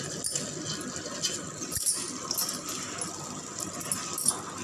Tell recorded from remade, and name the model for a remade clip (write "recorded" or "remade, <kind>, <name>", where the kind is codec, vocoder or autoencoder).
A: recorded